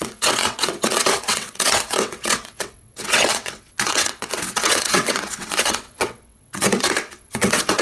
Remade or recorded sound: remade